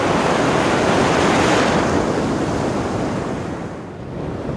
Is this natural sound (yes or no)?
yes